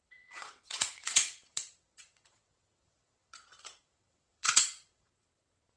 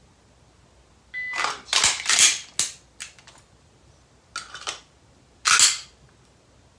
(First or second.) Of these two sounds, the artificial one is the first